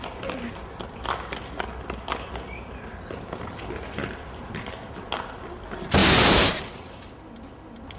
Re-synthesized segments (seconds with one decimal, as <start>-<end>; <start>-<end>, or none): none